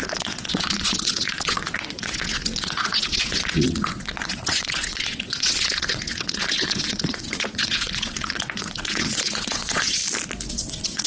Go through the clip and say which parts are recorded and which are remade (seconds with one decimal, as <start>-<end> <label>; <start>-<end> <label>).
0.0-10.0 remade; 10.0-10.5 recorded; 10.5-11.1 remade